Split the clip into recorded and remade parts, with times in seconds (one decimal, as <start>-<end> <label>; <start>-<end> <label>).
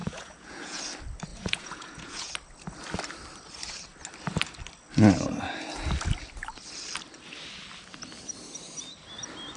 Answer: 0.0-0.8 remade; 0.8-1.3 recorded; 1.3-2.3 remade; 2.3-9.6 recorded